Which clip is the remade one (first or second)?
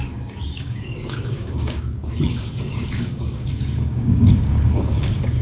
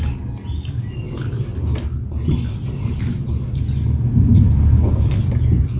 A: first